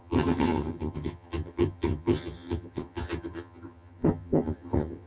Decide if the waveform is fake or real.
fake